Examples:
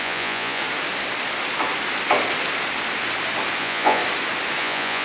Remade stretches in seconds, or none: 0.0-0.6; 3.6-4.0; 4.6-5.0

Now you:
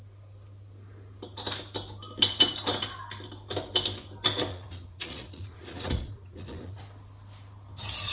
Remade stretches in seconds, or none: 4.5-6.8